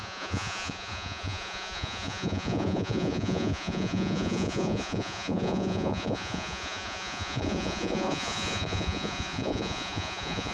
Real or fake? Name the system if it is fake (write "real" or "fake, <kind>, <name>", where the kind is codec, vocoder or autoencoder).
fake, vocoder, Vocos